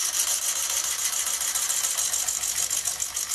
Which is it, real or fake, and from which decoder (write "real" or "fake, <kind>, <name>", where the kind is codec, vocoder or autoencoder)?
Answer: real